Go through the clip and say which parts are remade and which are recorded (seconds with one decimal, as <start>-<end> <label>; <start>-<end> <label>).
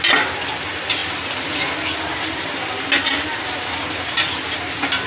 0.0-5.1 recorded